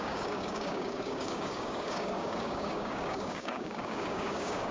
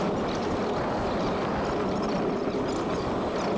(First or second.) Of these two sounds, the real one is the second